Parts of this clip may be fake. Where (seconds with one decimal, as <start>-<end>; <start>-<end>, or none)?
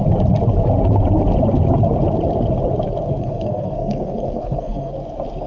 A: 3.1-4.9